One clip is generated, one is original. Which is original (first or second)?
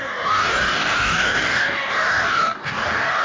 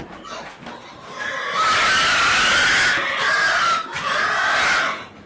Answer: second